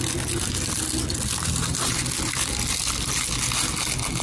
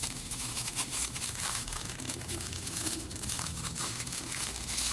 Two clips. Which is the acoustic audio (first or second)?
first